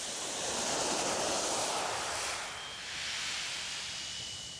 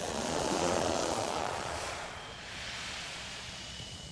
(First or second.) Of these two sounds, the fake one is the second